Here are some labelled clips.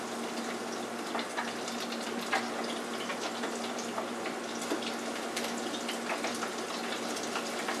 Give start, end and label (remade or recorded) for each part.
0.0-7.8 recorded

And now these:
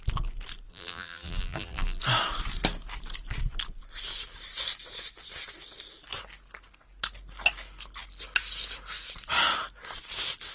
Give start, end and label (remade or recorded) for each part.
0.0-0.7 recorded; 0.7-2.0 remade; 2.0-10.5 recorded